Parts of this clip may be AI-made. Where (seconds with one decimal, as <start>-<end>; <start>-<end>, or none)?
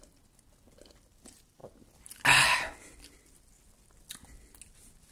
none